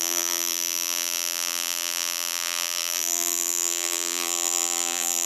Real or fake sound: fake